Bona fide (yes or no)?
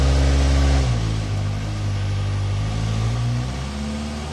yes